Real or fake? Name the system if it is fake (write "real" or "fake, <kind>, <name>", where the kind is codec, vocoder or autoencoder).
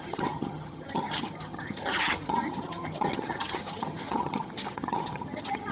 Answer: fake, vocoder, HiFi-GAN